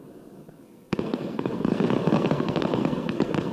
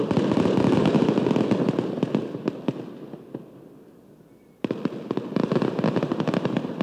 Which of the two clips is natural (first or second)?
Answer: second